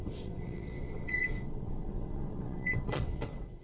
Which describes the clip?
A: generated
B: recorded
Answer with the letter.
A